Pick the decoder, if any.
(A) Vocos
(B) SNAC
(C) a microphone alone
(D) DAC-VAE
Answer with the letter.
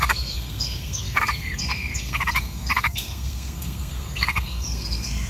B